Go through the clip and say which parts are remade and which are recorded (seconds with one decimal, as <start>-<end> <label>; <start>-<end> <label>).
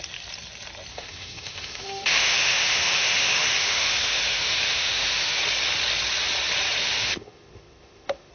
0.0-0.9 recorded; 0.9-5.4 remade; 5.4-6.8 recorded; 6.8-8.3 remade